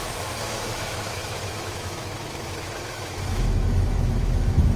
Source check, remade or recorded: remade